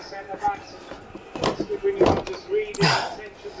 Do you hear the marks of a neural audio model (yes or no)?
no